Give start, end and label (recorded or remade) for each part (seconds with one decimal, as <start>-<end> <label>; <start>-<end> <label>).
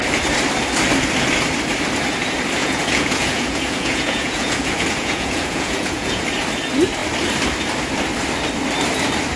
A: 0.0-2.6 recorded; 2.6-6.2 remade; 6.2-9.4 recorded